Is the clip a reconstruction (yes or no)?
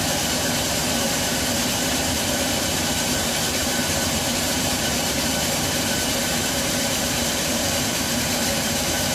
yes